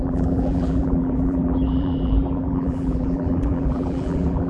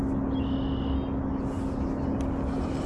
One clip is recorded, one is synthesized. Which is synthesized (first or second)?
first